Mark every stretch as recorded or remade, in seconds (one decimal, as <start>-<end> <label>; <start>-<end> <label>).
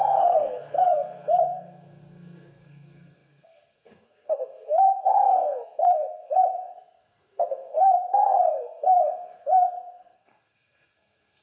0.0-11.4 remade